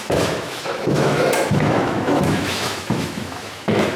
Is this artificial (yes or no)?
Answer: yes